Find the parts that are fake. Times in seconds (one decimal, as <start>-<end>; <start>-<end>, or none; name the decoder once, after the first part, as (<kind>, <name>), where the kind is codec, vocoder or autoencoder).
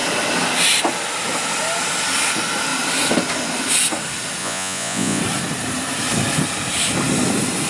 4.4-5.2 (vocoder, Vocos)